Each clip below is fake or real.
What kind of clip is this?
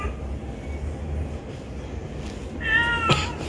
real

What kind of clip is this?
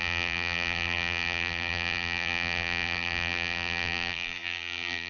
fake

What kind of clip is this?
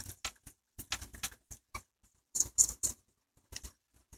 real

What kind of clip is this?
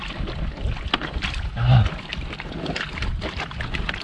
real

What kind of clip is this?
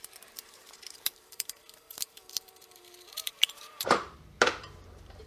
fake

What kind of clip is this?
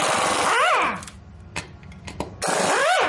real